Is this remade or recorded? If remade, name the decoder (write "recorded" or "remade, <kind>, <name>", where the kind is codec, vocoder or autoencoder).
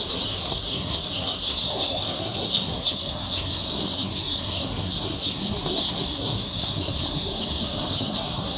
remade, codec, SNAC